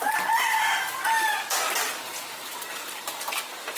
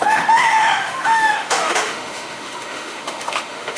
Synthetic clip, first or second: second